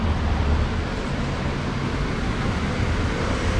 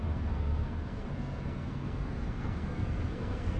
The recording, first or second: first